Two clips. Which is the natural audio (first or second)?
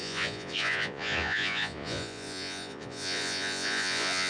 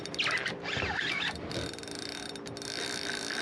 second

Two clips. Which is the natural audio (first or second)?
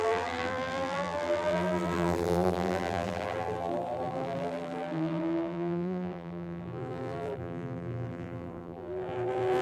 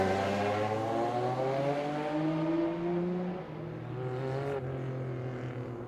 second